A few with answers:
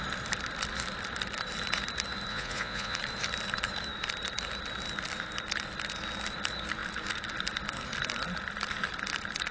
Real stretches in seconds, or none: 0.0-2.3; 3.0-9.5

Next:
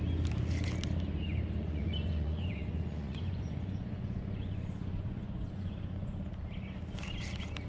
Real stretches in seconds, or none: 0.0-1.6; 6.2-7.7

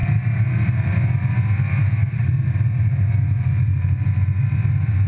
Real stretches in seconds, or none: 0.0-5.1

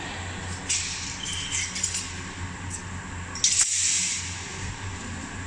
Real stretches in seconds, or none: 0.0-4.5

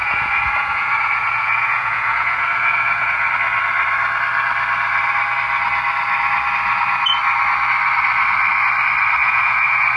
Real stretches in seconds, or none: 3.3-9.2